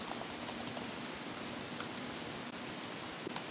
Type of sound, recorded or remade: remade